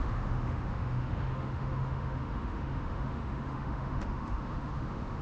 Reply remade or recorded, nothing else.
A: remade